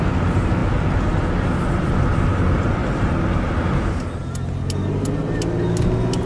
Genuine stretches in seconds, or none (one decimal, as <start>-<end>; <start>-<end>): 0.0-6.3